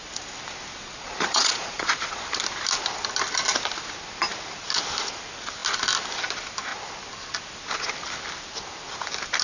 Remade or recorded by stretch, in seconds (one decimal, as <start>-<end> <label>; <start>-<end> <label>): 0.0-0.7 recorded; 0.7-2.2 remade; 2.2-9.4 recorded